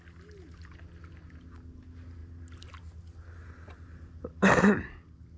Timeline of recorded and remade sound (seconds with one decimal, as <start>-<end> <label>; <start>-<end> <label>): 0.0-5.4 recorded